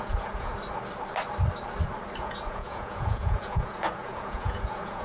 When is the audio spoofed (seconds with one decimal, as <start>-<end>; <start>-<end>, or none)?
0.0-0.5; 2.2-5.0